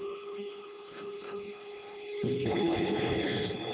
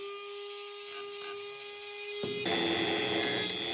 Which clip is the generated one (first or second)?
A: first